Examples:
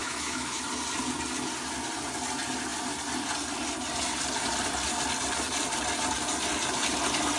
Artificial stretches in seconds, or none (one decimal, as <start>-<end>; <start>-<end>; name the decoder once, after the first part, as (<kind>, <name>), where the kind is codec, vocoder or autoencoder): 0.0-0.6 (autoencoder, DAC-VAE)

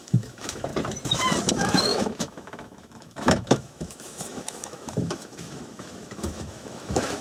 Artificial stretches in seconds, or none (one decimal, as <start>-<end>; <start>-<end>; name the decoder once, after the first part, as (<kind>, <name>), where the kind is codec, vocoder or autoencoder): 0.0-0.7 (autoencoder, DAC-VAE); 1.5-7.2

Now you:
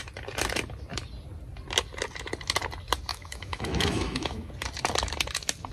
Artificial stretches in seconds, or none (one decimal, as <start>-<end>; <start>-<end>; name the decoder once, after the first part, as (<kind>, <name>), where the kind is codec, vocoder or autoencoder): 3.1-4.5 (autoencoder, DAC-VAE)

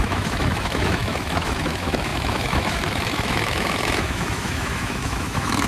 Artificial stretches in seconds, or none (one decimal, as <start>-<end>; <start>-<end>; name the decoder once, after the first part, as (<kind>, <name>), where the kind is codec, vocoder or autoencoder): 0.0-5.7 (autoencoder, DAC-VAE)

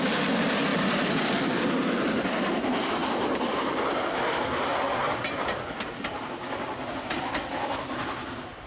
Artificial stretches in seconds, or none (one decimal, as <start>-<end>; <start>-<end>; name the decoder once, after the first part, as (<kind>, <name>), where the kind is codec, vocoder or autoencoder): none

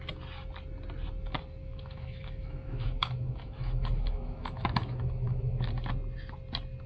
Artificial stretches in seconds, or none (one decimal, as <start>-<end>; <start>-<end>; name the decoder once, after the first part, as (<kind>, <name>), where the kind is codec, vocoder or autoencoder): 1.6-5.7 (autoencoder, DAC-VAE)

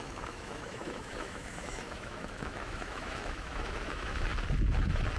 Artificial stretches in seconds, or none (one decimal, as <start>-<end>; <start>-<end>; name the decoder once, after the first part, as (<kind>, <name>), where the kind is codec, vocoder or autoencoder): 0.0-4.3 (autoencoder, DAC-VAE)

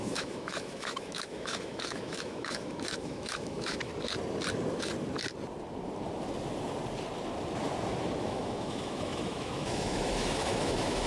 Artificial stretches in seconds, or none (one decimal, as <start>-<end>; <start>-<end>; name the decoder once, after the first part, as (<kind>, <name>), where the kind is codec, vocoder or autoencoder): 0.0-3.9 (autoencoder, DAC-VAE); 8.2-11.1